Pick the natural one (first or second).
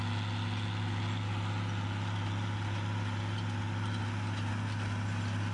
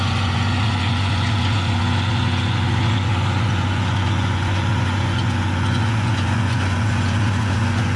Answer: first